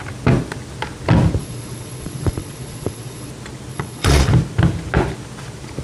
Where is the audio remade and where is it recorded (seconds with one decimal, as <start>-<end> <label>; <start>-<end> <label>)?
0.0-1.4 recorded; 1.4-3.3 remade; 3.3-3.7 recorded; 3.7-4.3 remade; 4.3-5.8 recorded